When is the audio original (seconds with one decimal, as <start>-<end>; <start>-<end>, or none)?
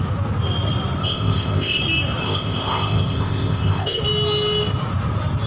0.0-1.0; 1.8-2.2; 4.0-5.5